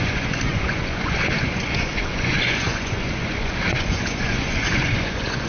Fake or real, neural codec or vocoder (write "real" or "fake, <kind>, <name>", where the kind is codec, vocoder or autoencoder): fake, vocoder, Vocos